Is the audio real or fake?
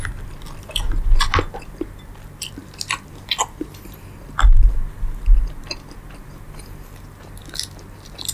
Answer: real